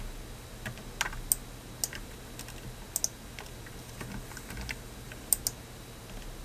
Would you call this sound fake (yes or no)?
no